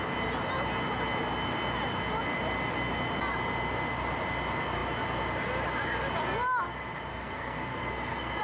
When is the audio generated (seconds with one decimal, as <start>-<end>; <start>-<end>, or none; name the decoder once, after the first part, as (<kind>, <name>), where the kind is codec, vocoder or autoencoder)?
7.1-8.4 (codec, SNAC)